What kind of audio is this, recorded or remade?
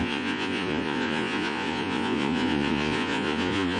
remade